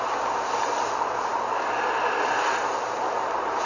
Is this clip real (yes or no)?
yes